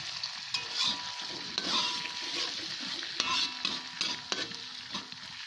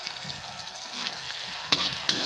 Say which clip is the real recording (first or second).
first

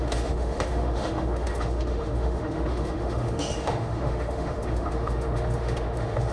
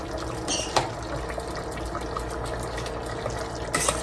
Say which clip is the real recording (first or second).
second